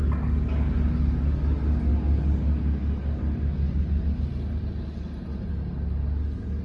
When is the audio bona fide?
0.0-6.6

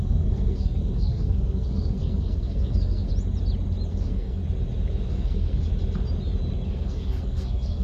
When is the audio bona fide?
3.1-3.9; 4.4-5.1; 5.7-6.7

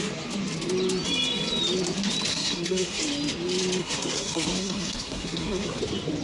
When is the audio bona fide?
0.0-2.3; 3.0-3.8; 5.8-6.2

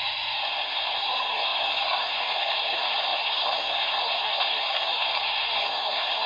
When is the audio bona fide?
none